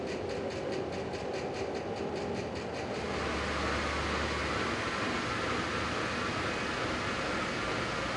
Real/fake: real